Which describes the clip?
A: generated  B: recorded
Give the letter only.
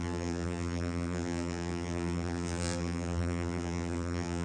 A